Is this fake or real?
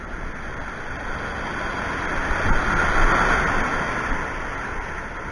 real